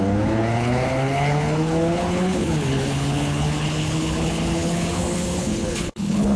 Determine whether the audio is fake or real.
fake